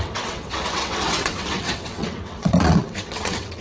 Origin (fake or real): fake